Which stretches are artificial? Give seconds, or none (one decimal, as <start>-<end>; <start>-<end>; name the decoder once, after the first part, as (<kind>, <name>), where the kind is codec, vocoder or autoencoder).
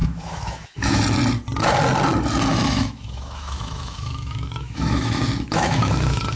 0.0-1.0 (autoencoder, DAC-VAE); 2.5-6.4